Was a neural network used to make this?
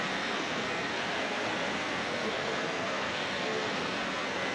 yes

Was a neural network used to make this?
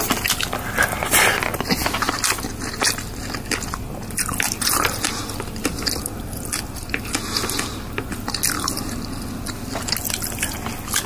no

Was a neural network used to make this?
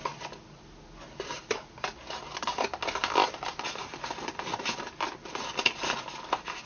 no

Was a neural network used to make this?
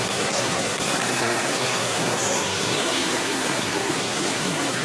yes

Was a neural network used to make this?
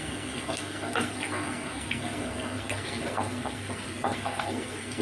yes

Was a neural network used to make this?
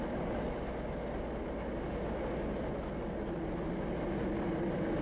no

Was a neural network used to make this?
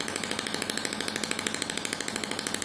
no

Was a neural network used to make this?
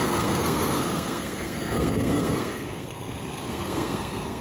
yes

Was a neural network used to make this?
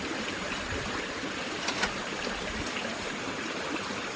no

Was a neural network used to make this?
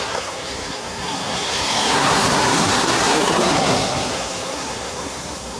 yes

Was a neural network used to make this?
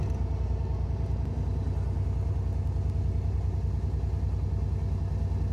no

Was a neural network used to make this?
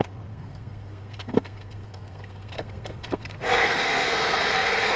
yes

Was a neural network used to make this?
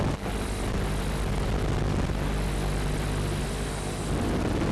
no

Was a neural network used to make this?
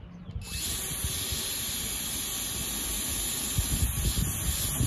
no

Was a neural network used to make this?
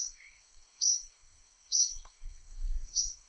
yes